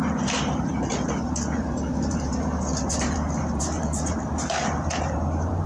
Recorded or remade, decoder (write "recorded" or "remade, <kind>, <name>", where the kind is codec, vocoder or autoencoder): remade, vocoder, BigVGAN v2